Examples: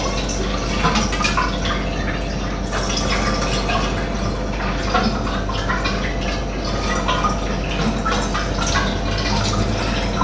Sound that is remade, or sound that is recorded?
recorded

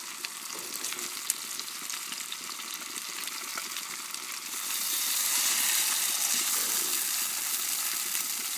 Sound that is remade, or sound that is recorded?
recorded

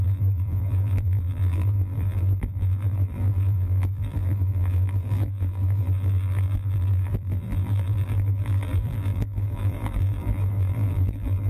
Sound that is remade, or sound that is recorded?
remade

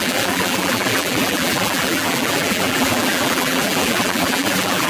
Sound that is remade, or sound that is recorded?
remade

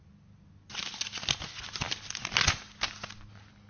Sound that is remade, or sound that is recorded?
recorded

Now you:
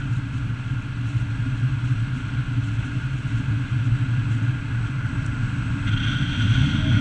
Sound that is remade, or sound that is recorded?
recorded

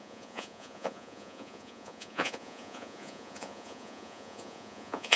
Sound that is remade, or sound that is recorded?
remade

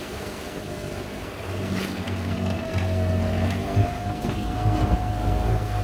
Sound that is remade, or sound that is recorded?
remade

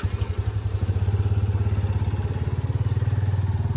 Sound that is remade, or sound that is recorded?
recorded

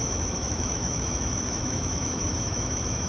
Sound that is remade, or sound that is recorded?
remade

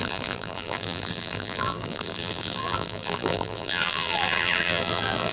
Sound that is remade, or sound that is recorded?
remade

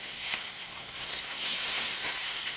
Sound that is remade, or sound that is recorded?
remade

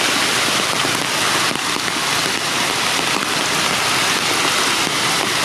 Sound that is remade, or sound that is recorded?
recorded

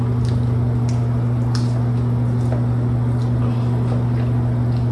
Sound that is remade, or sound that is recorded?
recorded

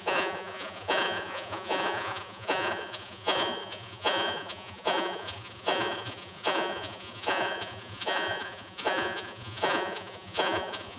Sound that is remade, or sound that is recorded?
remade